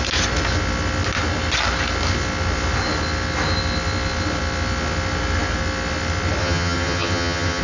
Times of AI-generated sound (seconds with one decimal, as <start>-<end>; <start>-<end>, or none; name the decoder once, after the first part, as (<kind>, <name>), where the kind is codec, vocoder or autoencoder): 6.4-7.6 (vocoder, HiFi-GAN)